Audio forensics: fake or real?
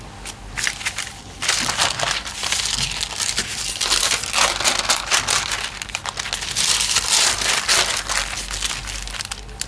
real